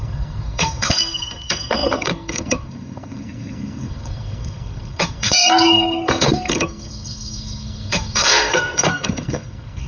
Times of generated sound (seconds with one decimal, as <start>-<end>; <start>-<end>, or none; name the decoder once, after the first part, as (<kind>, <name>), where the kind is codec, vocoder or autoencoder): 0.0-9.9 (codec, SNAC)